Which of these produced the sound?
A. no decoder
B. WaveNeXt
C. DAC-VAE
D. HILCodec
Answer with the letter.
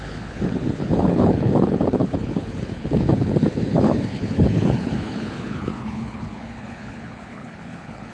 D